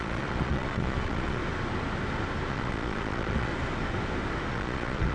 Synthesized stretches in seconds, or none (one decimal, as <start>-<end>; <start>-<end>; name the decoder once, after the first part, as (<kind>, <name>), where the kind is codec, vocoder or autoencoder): 0.0-1.4 (vocoder, Vocos); 2.5-3.5; 4.5-5.1